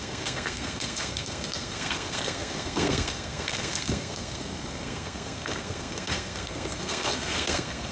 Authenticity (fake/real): fake